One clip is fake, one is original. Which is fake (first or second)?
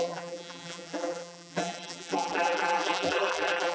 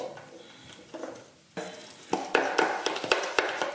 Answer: first